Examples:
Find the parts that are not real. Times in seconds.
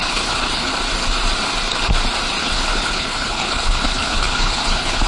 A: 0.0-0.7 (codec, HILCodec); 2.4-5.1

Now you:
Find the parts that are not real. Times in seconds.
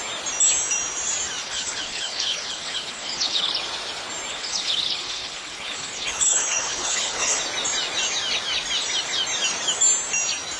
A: 1.4-3.5 (codec, HILCodec); 4.3-7.4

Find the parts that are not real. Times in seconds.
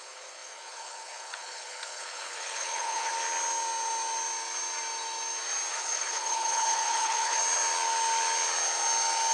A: 0.0-3.1 (codec, HILCodec); 5.7-7.4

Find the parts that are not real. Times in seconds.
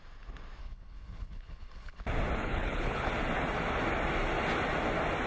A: 0.6-2.0 (codec, HILCodec); 2.4-3.1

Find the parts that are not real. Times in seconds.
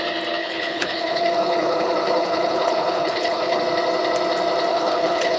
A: 0.4-3.6 (codec, HILCodec); 4.7-5.4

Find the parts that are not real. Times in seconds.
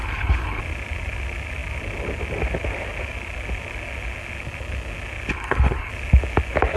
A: 0.0-0.6 (codec, HILCodec); 5.3-5.9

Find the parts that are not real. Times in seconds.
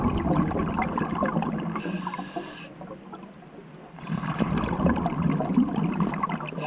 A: none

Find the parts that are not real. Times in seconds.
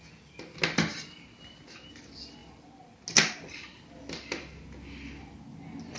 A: none